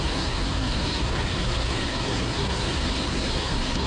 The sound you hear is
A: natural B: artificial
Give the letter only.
B